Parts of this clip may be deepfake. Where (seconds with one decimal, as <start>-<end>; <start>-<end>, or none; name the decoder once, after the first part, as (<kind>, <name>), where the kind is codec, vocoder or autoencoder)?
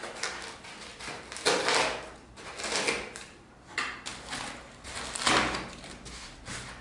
none